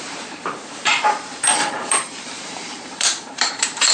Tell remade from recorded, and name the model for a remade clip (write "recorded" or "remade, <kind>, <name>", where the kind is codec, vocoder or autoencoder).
remade, vocoder, BigVGAN v2